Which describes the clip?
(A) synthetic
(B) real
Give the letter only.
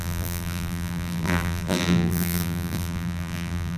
A